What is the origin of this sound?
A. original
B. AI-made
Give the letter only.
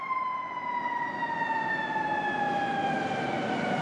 A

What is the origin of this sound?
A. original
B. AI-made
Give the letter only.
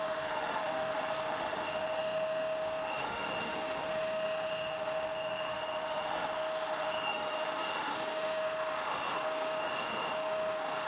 B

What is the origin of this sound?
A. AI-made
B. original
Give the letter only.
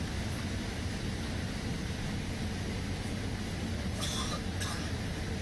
B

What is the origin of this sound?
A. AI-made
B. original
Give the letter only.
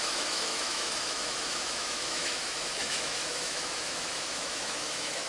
A